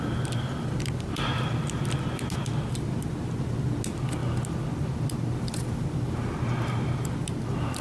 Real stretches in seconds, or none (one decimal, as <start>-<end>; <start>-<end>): 0.0-7.8